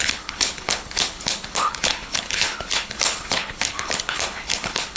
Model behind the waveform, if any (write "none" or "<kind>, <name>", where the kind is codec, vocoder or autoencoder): codec, HILCodec